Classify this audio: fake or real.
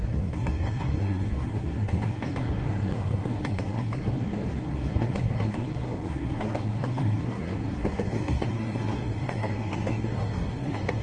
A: fake